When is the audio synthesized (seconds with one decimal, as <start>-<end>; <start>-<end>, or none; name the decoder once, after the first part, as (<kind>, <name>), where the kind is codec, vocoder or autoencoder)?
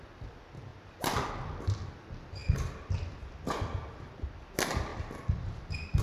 none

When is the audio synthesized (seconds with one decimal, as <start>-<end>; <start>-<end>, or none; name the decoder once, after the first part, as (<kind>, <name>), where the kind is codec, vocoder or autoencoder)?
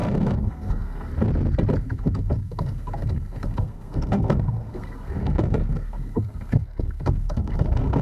0.0-1.1 (codec, SNAC); 1.8-8.0